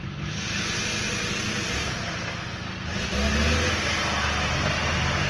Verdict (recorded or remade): recorded